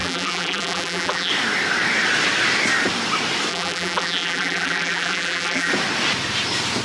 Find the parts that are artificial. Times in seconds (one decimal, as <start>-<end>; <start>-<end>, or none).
0.0-1.3; 3.5-5.7